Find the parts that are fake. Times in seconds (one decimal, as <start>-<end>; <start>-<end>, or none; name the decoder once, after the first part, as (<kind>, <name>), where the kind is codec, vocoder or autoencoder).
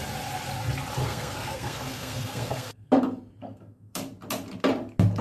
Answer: 1.0-2.9 (codec, SNAC); 3.4-4.0